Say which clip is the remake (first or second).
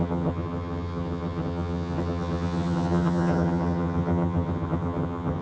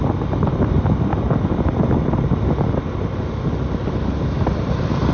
first